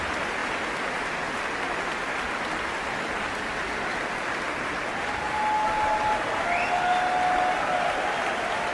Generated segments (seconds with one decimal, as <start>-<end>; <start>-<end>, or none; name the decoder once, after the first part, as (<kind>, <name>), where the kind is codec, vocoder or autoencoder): none